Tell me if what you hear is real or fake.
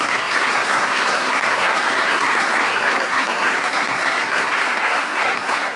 fake